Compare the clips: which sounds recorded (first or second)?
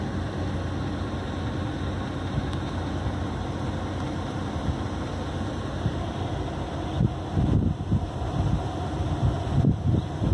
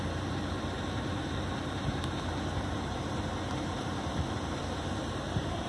first